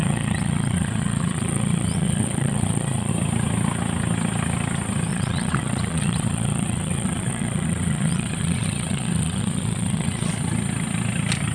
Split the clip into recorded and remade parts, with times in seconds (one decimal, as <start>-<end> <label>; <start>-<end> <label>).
0.0-3.1 remade; 3.1-5.1 recorded; 5.1-10.3 remade; 10.3-11.5 recorded